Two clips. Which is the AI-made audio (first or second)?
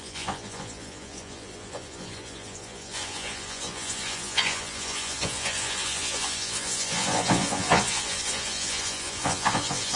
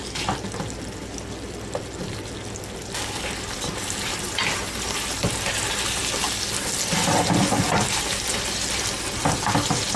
first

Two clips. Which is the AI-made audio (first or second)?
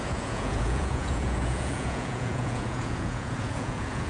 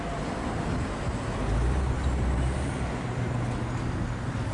first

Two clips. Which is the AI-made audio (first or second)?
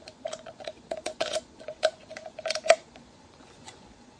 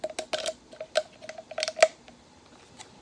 first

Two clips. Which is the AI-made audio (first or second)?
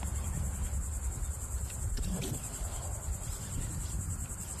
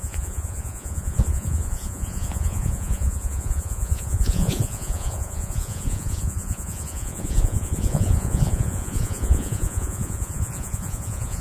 second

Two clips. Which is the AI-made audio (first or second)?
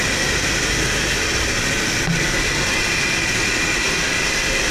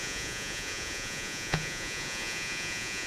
second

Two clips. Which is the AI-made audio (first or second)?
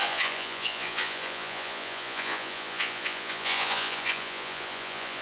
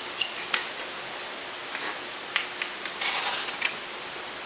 first